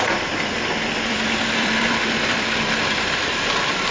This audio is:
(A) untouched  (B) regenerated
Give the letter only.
B